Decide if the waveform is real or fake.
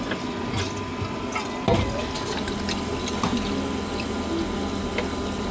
real